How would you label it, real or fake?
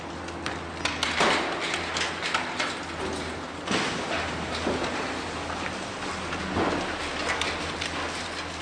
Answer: real